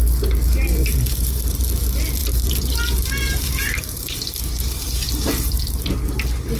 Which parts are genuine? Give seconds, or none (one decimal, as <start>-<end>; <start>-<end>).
0.0-0.6; 1.6-2.2; 5.9-6.6